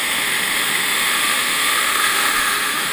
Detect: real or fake fake